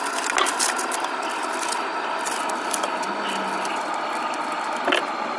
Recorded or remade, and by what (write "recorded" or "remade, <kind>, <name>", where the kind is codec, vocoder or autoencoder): recorded